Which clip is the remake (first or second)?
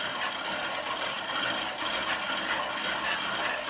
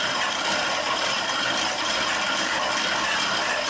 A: second